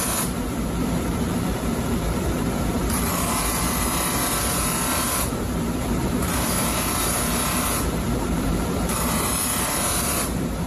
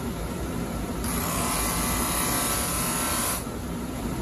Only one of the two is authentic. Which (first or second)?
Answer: second